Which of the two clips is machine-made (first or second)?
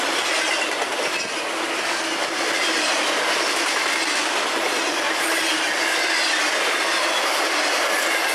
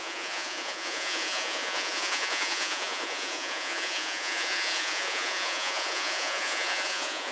second